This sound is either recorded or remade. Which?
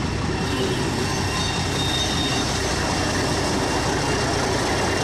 recorded